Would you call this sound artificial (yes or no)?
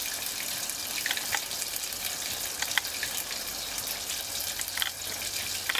no